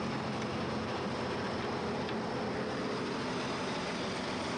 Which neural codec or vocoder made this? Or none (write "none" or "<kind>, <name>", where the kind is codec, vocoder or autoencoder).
none